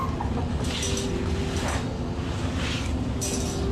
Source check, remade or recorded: recorded